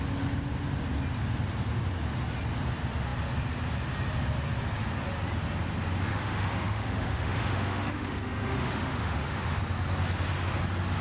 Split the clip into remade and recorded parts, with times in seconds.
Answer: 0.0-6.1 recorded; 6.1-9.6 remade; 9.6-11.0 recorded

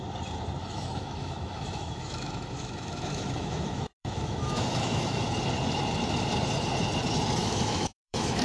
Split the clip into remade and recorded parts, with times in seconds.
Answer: 0.0-0.6 recorded; 0.6-5.2 remade; 5.2-7.4 recorded; 7.4-8.4 remade

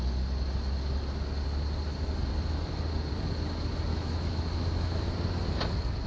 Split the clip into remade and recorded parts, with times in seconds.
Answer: 0.0-3.9 recorded; 3.9-5.1 remade; 5.1-6.1 recorded

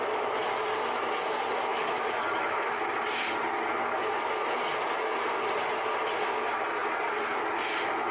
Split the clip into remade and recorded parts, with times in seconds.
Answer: 0.0-1.7 recorded; 1.7-2.9 remade; 2.9-8.1 recorded

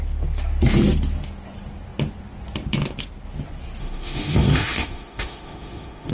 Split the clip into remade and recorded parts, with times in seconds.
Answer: 0.0-3.8 recorded; 3.8-6.1 remade

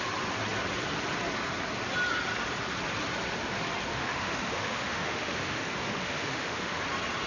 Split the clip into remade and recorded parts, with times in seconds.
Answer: 0.0-3.9 recorded; 3.9-6.8 remade; 6.8-7.3 recorded

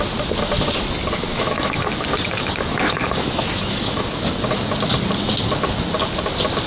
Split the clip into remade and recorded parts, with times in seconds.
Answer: 0.0-1.3 recorded; 1.3-4.0 remade; 4.0-6.7 recorded